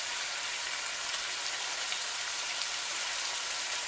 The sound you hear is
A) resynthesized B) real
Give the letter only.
B